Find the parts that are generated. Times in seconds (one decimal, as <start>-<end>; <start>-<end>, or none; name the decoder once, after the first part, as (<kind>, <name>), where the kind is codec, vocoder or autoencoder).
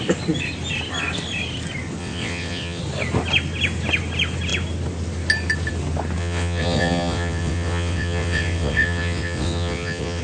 2.0-2.8 (vocoder, WaveNeXt); 6.2-10.2